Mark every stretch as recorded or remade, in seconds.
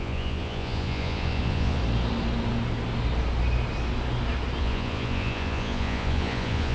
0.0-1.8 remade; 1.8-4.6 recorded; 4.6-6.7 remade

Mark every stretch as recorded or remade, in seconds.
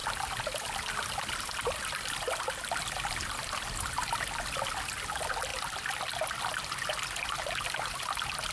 0.0-8.5 recorded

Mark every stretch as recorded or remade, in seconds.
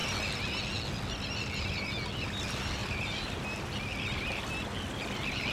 0.0-5.5 recorded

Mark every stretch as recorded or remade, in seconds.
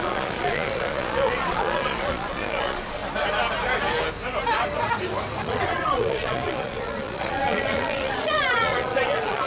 0.0-3.0 remade; 3.0-5.4 recorded; 5.4-9.5 remade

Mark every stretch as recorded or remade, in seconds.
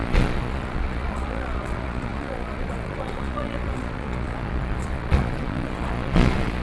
0.0-6.6 remade